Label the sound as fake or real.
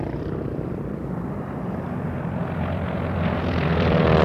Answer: fake